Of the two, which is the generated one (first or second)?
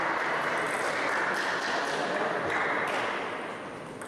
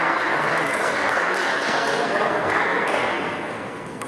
second